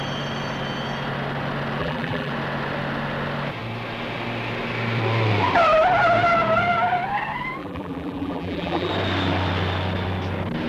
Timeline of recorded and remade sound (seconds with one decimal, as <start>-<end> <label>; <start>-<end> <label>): 0.0-1.8 recorded; 1.8-2.3 remade; 2.3-7.6 recorded; 7.6-8.9 remade; 8.9-10.7 recorded